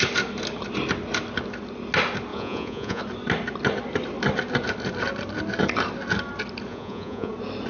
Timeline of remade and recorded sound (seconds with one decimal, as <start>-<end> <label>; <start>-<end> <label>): 0.0-2.3 recorded; 2.3-3.0 remade; 3.0-6.7 recorded; 6.7-7.3 remade; 7.3-7.7 recorded